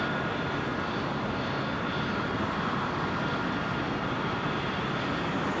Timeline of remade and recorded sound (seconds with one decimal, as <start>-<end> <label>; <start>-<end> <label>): 0.0-5.6 recorded